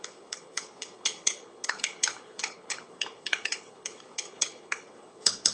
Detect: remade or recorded remade